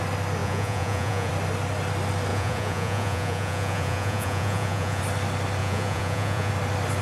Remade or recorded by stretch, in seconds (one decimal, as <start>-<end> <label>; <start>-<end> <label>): 0.0-0.4 recorded; 0.4-1.3 remade; 1.3-2.3 recorded; 2.3-5.0 remade; 5.0-5.6 recorded; 5.6-6.5 remade; 6.5-7.0 recorded